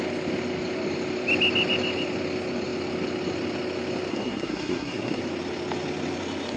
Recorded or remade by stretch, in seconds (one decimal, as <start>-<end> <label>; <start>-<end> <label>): 0.0-4.1 recorded; 4.1-5.2 remade; 5.2-6.6 recorded